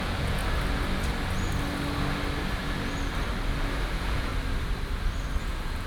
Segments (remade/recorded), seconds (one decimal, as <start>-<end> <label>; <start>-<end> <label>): 0.0-0.4 remade; 0.4-3.9 recorded; 3.9-4.3 remade; 4.3-5.4 recorded; 5.4-5.9 remade